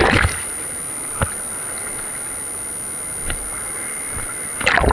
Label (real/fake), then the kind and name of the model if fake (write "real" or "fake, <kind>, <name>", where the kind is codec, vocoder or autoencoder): real